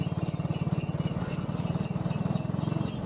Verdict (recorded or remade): recorded